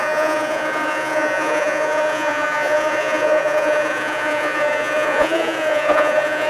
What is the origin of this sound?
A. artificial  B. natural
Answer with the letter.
A